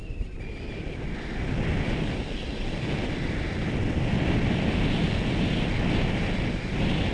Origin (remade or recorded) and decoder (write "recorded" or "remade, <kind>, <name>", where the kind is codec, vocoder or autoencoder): recorded